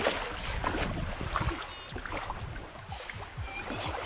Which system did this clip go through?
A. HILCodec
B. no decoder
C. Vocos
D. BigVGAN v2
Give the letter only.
B